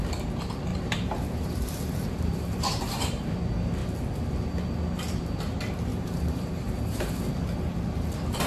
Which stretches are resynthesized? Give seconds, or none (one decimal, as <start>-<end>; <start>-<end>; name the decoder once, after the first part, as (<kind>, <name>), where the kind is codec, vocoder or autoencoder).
0.7-3.4 (vocoder, BigVGAN v2); 5.9-7.2

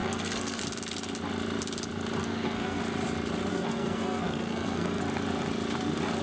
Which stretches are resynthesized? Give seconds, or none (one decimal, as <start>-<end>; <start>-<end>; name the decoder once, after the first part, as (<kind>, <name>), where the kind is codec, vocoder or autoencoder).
0.0-0.6 (codec, SNAC); 2.2-2.8; 3.5-5.0

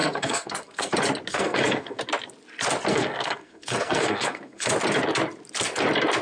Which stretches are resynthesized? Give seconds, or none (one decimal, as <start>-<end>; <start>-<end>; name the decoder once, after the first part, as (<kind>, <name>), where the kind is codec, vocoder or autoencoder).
0.0-0.9 (codec, SNAC); 1.3-2.0; 2.9-4.7

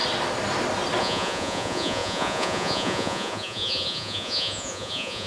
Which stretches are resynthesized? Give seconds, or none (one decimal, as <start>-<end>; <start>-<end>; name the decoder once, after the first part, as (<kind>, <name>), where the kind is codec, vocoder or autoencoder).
1.0-5.3 (vocoder, Vocos)